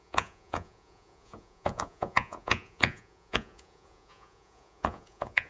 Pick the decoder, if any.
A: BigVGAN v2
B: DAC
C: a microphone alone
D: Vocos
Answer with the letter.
D